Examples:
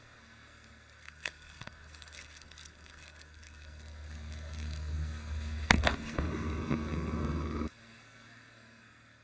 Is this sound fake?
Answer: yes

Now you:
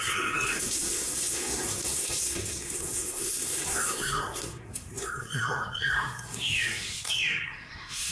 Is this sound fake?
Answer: yes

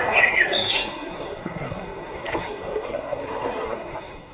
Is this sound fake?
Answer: yes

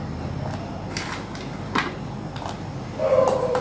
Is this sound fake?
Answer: no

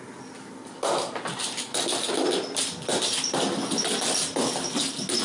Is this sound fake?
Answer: no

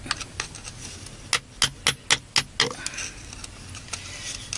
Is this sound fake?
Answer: no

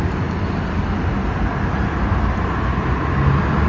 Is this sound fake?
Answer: no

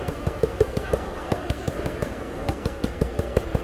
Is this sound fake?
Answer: yes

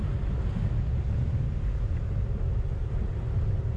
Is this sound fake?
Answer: no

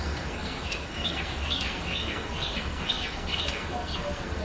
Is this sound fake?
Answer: yes